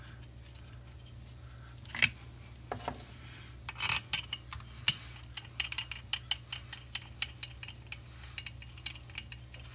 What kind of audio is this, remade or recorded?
recorded